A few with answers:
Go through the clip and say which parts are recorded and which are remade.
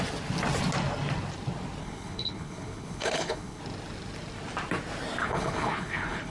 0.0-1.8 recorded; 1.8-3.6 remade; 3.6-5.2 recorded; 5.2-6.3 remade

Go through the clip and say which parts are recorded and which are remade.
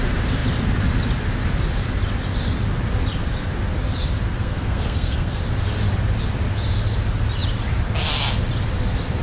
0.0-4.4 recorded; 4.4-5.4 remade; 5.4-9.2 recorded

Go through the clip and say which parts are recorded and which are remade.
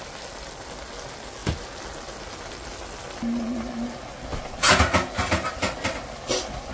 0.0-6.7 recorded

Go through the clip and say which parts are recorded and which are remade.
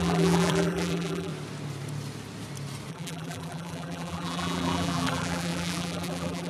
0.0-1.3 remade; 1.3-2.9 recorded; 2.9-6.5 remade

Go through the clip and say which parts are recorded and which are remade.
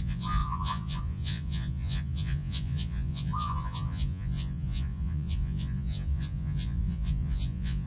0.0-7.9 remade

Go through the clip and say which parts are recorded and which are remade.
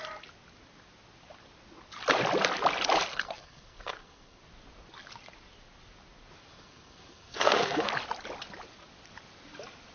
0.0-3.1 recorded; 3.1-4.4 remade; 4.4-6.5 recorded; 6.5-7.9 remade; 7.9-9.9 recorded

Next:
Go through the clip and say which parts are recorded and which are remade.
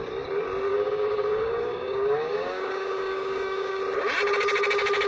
0.0-0.7 recorded; 0.7-3.8 remade; 3.8-5.1 recorded